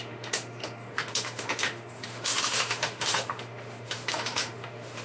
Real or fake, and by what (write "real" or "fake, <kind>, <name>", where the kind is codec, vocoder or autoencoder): fake, autoencoder, DAC-VAE